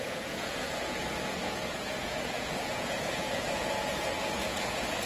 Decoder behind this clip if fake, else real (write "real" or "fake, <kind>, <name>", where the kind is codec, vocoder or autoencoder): fake, vocoder, Vocos